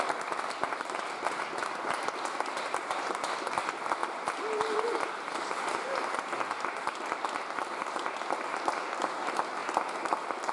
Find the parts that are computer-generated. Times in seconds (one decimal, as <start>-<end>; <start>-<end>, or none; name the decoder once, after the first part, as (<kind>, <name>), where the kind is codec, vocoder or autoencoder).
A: none